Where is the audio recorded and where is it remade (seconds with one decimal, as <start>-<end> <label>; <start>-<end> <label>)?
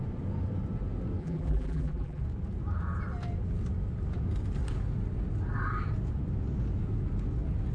0.0-1.2 recorded; 1.2-2.2 remade; 2.2-7.7 recorded